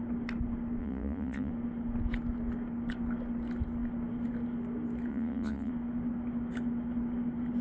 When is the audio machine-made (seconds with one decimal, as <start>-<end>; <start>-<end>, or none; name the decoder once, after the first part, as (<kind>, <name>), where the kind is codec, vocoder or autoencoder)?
0.8-1.5 (vocoder, Vocos); 5.1-5.7